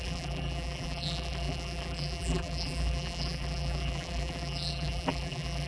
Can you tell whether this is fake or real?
fake